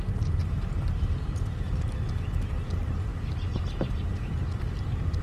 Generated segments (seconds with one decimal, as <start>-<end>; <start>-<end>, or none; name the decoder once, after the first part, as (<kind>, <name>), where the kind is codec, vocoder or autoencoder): 0.4-1.7 (vocoder, BigVGAN v2)